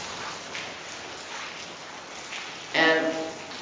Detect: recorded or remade recorded